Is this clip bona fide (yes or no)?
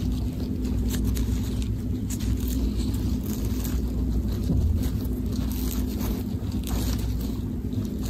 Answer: yes